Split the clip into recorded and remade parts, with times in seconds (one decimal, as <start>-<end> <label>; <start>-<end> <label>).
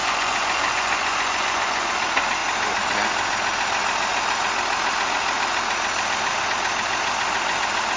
0.0-1.9 remade; 1.9-8.0 recorded